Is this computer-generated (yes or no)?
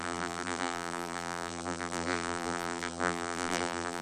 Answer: yes